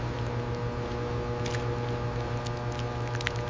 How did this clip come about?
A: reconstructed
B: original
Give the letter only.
B